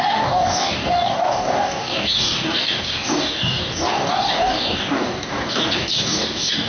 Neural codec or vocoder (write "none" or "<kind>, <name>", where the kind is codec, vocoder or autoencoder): codec, DAC